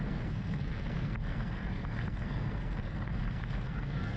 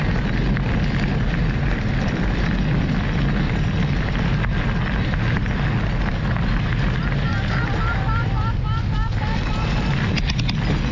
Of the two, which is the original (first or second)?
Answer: second